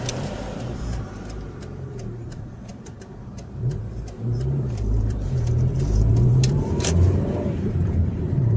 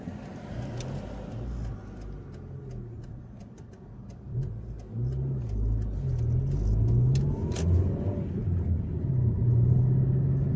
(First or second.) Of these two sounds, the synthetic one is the first